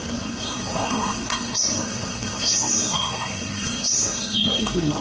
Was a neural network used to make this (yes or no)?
yes